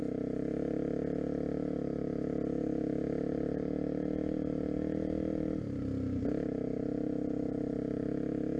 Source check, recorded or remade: recorded